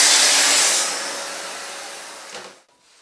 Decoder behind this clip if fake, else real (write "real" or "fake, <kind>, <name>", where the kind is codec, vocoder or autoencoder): real